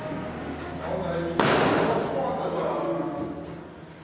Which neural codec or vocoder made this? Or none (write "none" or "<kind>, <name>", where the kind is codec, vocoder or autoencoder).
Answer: none